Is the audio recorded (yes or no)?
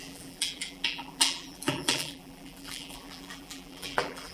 no